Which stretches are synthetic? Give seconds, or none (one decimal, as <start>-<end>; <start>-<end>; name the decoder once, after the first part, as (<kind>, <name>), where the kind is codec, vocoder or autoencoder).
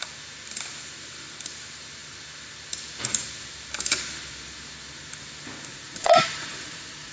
5.7-7.1 (vocoder, Vocos)